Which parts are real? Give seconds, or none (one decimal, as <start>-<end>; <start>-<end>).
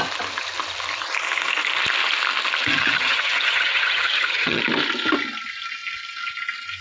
0.0-2.7; 4.6-6.8